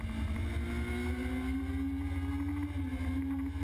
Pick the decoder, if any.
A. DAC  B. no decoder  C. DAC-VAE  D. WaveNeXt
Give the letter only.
B